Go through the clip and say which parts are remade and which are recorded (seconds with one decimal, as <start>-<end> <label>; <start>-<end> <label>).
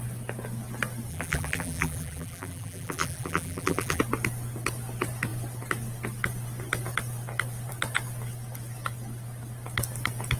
0.0-1.1 recorded; 1.1-4.0 remade; 4.0-10.4 recorded